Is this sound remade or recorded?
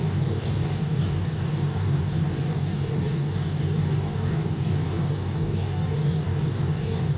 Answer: remade